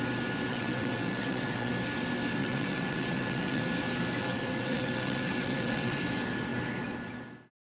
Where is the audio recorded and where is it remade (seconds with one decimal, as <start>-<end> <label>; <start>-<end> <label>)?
0.0-0.5 recorded; 0.5-1.7 remade; 1.7-2.4 recorded; 2.4-3.6 remade; 3.6-4.2 recorded; 4.2-6.0 remade; 6.0-7.7 recorded